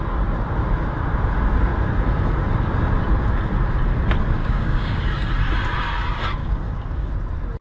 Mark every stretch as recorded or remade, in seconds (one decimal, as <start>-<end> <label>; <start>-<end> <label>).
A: 0.0-4.4 recorded; 4.4-5.0 remade; 5.0-6.4 recorded; 6.4-7.1 remade; 7.1-7.6 recorded